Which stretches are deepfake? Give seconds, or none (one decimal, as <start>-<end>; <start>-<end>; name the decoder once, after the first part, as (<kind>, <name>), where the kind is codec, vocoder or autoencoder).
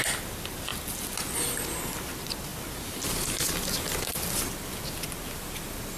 none